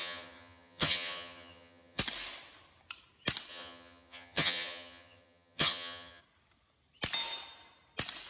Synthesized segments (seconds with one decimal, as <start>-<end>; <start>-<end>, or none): 0.0-2.0; 3.5-6.2